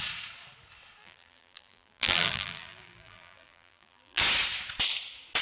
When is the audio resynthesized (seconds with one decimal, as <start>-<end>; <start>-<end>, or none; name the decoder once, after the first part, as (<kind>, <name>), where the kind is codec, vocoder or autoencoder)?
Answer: 1.0-4.2 (vocoder, BigVGAN v2)